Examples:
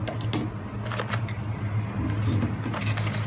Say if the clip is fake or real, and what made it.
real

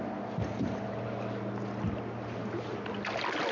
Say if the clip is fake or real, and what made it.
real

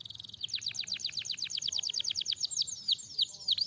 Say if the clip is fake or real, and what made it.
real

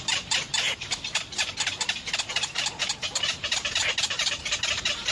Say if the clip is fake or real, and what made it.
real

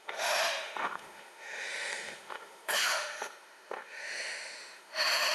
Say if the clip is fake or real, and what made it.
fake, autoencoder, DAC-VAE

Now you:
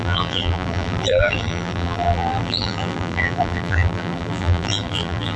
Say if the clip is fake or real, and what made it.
fake, vocoder, BigVGAN v2